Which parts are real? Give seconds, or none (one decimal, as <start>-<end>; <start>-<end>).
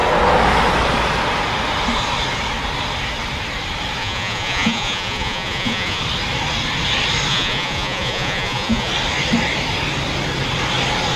0.0-4.0; 6.0-7.3; 8.9-11.2